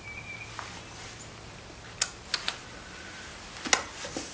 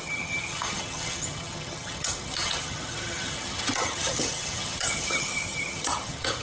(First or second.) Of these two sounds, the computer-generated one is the second